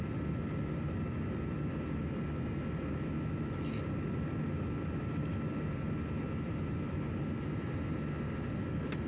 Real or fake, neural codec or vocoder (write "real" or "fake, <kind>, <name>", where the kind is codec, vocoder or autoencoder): real